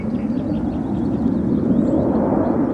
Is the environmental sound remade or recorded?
recorded